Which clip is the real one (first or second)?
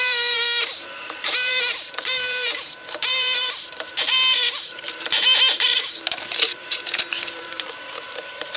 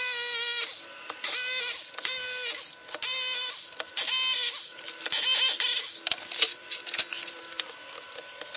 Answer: second